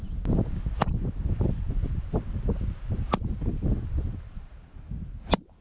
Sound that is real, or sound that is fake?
real